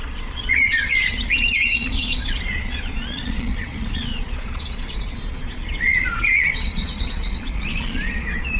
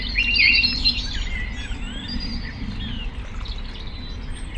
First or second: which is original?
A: second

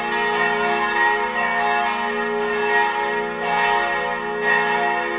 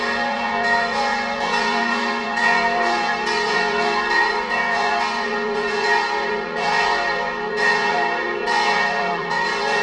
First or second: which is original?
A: first